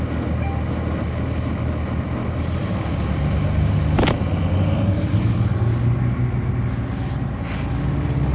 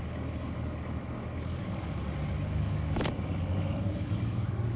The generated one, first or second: second